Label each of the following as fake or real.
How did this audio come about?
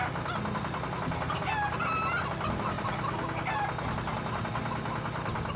real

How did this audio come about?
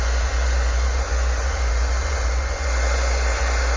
fake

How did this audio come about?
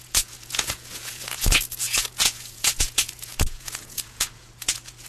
fake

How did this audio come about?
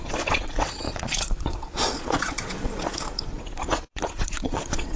fake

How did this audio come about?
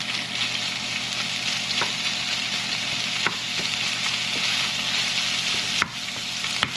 real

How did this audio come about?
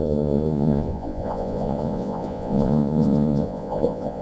fake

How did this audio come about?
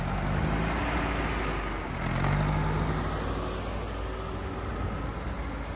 real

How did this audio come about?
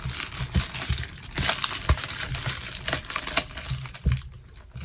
real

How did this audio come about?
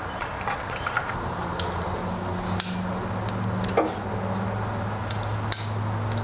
real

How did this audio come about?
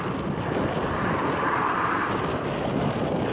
real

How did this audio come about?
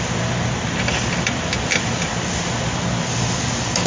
real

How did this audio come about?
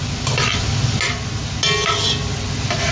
real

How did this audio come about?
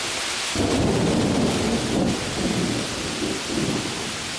real